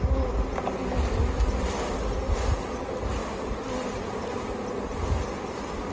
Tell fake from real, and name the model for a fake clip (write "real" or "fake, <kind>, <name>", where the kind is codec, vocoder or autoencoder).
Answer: real